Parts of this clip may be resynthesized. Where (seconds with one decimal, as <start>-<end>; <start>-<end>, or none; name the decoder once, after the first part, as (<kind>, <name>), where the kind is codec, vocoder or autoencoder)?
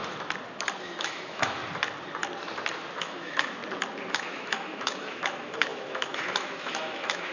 0.8-1.6 (autoencoder, DAC-VAE); 3.0-3.6; 4.1-7.3